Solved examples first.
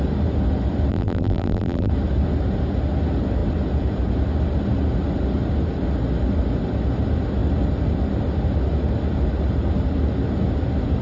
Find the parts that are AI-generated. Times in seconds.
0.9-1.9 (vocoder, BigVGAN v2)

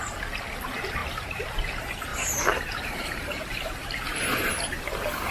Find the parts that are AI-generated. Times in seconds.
1.0-1.6 (vocoder, BigVGAN v2); 2.1-5.3